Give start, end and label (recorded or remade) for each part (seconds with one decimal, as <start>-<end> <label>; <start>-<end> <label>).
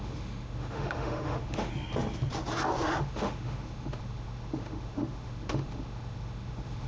0.0-1.7 remade; 1.7-3.0 recorded; 3.0-6.9 remade